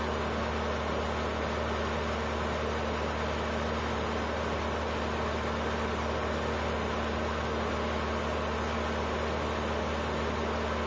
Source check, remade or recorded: recorded